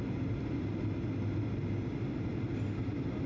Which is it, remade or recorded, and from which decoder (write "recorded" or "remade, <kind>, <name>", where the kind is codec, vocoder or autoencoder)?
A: recorded